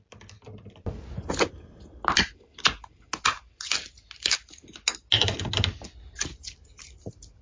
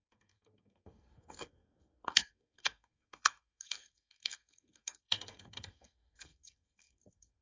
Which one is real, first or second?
first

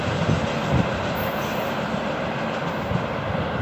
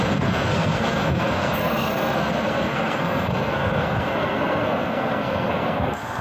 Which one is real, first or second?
first